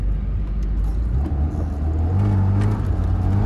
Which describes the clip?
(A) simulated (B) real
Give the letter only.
B